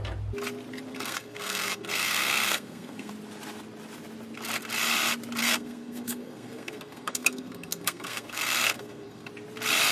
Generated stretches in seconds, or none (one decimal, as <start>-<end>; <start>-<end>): 0.9-3.1; 5.4-9.3